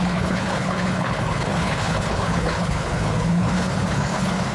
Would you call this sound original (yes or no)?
no